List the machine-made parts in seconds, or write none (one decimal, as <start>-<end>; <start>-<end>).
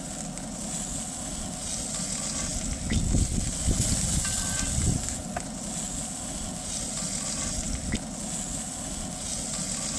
none